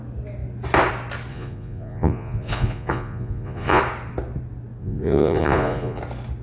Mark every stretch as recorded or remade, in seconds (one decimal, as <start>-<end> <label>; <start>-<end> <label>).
0.0-1.3 recorded; 1.3-3.8 remade; 3.8-4.8 recorded; 4.8-6.0 remade; 6.0-6.4 recorded